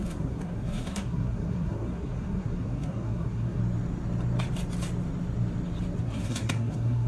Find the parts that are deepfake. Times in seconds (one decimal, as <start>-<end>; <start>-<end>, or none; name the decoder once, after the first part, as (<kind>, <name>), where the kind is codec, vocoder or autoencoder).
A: 0.0-3.6 (codec, SNAC); 6.0-7.1